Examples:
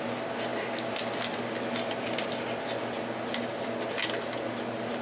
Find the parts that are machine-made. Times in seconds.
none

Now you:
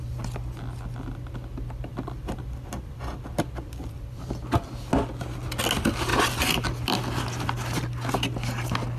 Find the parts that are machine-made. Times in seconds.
1.9-4.3 (vocoder, BigVGAN v2)